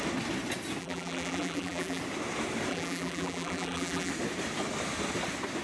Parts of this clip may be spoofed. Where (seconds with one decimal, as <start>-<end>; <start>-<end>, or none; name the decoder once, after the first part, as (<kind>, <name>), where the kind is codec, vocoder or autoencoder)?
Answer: 0.8-2.0 (vocoder, BigVGAN v2); 2.7-4.1